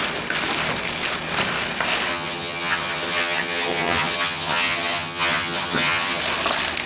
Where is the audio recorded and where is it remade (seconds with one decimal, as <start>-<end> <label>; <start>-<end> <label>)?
0.0-2.1 recorded; 2.1-6.2 remade; 6.2-6.9 recorded